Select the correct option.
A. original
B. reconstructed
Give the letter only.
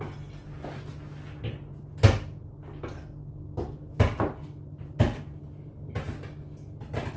A